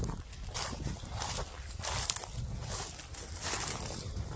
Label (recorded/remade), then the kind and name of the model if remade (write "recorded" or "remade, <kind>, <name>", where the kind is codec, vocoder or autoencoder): recorded